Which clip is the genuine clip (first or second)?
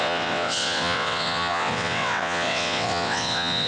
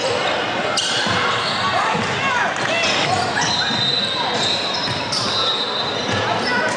second